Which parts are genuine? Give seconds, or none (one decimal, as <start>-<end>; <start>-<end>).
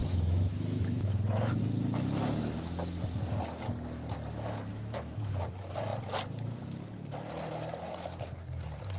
1.6-4.7; 5.3-9.0